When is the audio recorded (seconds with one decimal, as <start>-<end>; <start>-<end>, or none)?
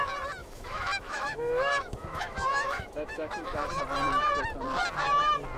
0.0-0.4; 3.8-5.6